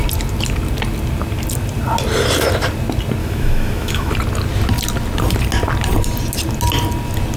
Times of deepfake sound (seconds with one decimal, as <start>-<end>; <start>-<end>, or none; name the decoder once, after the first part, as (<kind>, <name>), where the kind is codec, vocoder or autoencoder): 3.2-4.1 (autoencoder, DAC-VAE)